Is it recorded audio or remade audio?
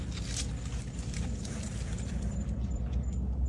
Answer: recorded